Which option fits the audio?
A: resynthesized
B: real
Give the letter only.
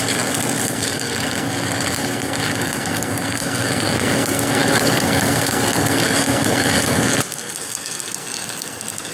A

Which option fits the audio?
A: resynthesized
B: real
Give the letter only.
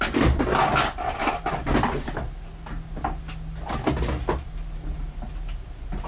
B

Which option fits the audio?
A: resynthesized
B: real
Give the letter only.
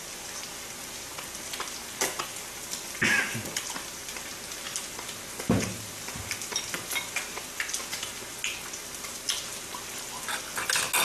B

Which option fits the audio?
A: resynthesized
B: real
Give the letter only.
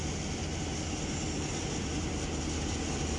B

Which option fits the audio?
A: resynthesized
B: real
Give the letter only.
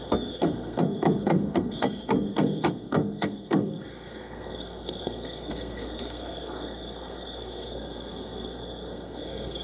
A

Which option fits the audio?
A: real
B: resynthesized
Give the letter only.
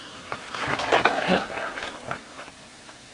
B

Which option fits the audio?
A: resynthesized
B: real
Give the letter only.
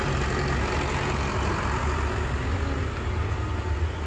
B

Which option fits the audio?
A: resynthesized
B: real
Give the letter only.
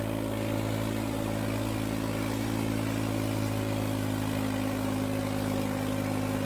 B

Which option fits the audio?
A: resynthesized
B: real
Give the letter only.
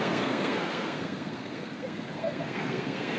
A